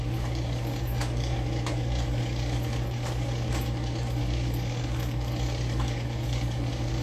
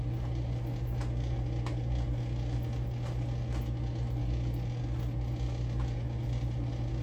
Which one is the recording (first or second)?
second